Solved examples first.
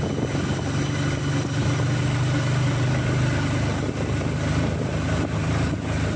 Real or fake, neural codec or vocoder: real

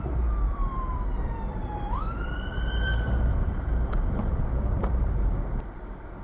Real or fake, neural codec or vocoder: fake, vocoder, BigVGAN v2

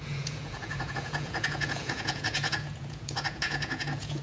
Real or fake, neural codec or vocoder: fake, vocoder, Vocos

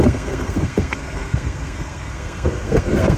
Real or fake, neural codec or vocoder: fake, codec, SNAC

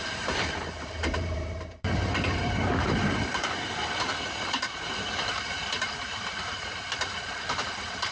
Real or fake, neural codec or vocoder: fake, vocoder, BigVGAN v2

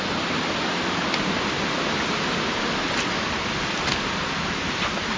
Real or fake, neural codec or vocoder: real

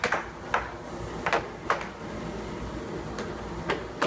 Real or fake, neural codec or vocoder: real